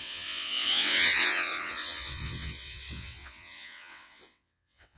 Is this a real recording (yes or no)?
no